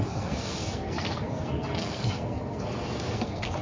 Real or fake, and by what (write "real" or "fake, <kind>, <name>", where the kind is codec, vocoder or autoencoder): fake, codec, SNAC